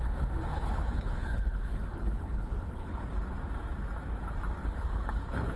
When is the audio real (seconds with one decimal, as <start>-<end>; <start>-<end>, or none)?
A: 0.0-0.5; 3.1-4.6